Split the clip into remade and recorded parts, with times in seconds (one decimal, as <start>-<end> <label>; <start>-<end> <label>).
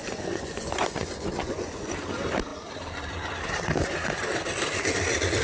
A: 0.0-1.9 remade; 1.9-5.4 recorded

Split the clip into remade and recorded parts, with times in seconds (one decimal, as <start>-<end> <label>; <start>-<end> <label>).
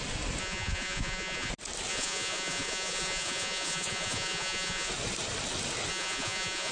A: 0.0-0.4 recorded; 0.4-1.5 remade; 1.5-1.9 recorded; 1.9-4.9 remade; 4.9-5.9 recorded; 5.9-6.7 remade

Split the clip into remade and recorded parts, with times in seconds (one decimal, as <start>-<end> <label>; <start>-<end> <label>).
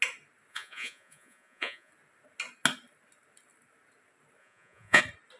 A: 0.0-0.5 recorded; 0.5-1.9 remade; 1.9-4.4 recorded; 4.4-5.0 remade; 5.0-5.4 recorded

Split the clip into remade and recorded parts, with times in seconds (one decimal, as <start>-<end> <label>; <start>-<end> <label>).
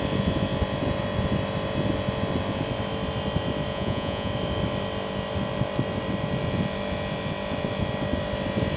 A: 0.0-3.7 recorded; 3.7-4.3 remade; 4.3-8.8 recorded